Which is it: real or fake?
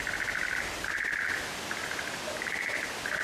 real